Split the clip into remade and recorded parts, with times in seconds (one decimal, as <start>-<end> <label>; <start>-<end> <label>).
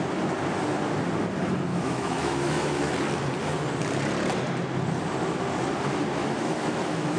0.0-1.7 recorded; 1.7-2.9 remade; 2.9-6.2 recorded; 6.2-7.2 remade